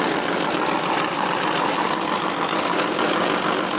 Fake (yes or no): no